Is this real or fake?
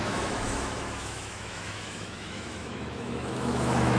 fake